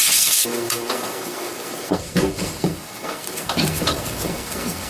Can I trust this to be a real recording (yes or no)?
no